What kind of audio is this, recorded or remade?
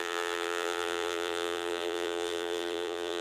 remade